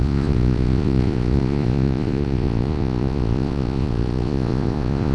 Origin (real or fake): fake